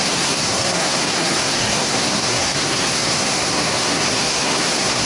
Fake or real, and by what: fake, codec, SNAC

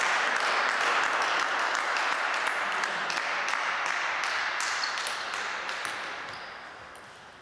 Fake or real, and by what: real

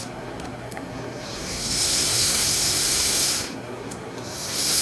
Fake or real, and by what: fake, codec, SNAC